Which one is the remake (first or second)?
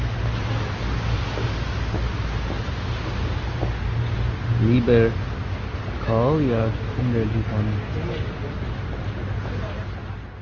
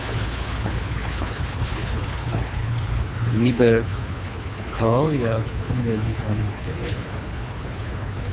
second